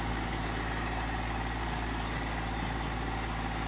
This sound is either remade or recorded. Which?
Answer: recorded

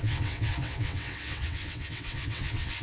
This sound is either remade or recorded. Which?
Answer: remade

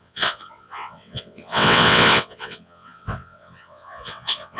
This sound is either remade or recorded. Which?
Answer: remade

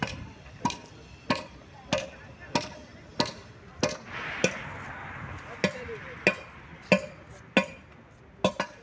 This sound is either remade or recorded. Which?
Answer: recorded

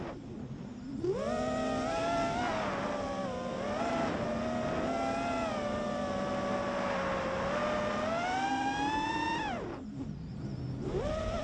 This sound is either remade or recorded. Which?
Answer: recorded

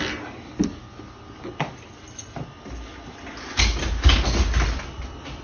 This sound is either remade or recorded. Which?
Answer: recorded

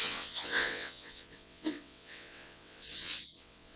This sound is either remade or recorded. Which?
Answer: remade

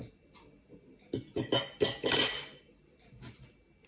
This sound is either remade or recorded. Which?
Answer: recorded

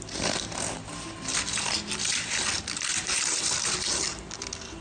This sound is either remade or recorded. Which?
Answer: recorded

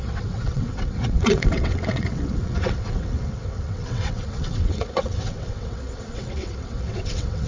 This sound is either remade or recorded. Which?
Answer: remade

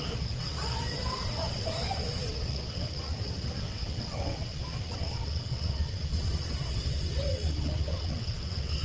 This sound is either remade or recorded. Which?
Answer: remade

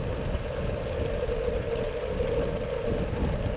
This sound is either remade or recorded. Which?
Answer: recorded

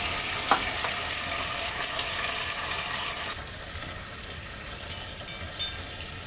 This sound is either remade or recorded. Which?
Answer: recorded